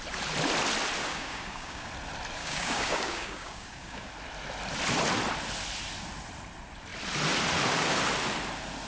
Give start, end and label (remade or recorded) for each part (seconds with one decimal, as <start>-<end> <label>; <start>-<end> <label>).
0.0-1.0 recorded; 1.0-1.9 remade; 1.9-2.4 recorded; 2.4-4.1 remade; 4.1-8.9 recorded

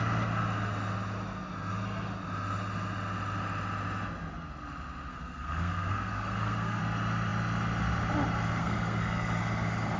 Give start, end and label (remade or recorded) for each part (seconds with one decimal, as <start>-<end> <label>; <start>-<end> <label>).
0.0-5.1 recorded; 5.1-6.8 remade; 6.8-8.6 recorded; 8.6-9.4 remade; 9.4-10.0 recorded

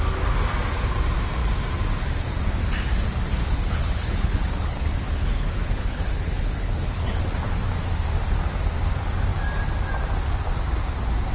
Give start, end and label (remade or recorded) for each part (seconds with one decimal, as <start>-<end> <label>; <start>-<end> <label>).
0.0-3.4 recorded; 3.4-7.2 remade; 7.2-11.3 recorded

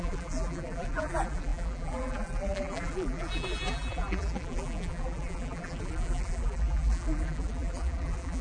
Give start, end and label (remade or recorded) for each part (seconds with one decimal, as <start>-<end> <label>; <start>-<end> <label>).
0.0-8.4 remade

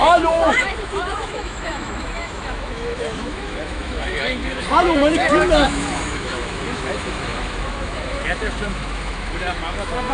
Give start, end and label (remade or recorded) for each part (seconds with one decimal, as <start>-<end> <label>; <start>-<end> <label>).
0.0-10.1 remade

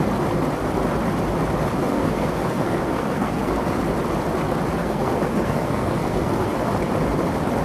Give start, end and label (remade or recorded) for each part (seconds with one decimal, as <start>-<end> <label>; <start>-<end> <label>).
0.0-1.8 recorded; 1.8-3.8 remade; 3.8-4.8 recorded; 4.8-6.7 remade; 6.7-7.6 recorded

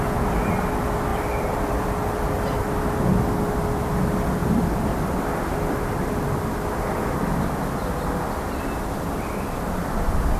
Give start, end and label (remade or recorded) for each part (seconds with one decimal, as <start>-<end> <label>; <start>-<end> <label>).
0.0-1.1 recorded; 1.1-2.8 remade; 2.8-10.4 recorded